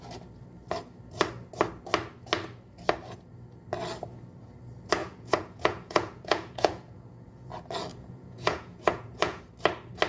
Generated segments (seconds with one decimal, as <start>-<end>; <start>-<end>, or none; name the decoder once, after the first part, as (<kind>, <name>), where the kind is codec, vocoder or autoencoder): 5.0-7.5 (vocoder, Vocos); 7.9-9.4